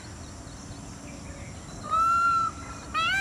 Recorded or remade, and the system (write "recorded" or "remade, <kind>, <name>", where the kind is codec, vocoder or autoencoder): recorded